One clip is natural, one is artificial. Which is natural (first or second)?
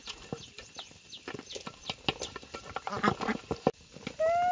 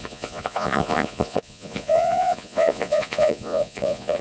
first